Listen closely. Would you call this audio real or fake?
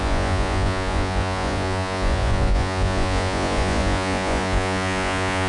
fake